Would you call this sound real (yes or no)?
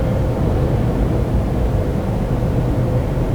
no